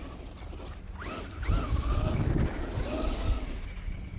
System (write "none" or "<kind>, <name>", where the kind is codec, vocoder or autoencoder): none